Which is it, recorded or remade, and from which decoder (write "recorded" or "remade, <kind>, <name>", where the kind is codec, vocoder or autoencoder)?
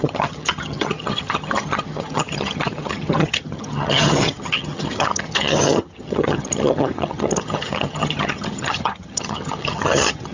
remade, vocoder, HiFi-GAN